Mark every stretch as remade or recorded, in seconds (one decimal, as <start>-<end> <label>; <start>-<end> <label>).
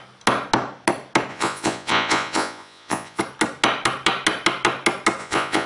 0.0-1.3 recorded; 1.3-3.2 remade; 3.2-5.2 recorded; 5.2-5.7 remade